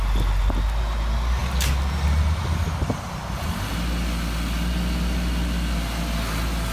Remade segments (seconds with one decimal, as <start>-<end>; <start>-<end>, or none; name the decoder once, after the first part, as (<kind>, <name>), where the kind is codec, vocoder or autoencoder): none